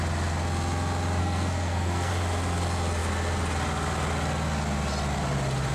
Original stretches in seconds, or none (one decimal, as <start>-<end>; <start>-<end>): 0.0-1.2; 2.1-5.7